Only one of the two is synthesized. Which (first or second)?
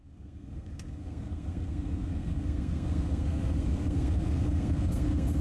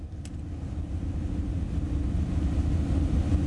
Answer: first